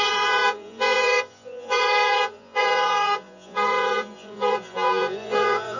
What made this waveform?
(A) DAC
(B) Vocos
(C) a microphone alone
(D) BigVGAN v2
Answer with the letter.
B